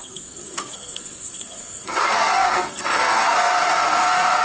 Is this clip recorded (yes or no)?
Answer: no